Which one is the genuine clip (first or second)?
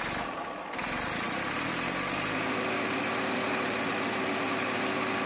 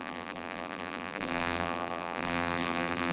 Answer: first